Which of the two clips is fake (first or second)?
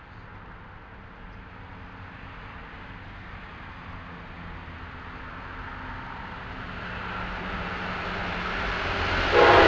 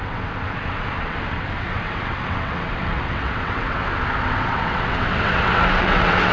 second